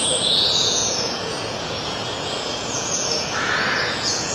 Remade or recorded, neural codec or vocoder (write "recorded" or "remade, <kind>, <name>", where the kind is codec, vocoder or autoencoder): remade, vocoder, Vocos